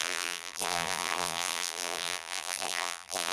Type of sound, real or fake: fake